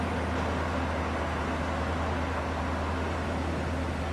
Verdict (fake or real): real